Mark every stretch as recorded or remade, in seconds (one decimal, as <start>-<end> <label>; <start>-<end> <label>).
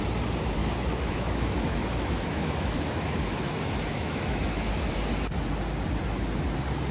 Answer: 0.0-0.6 recorded; 0.6-4.7 remade; 4.7-6.9 recorded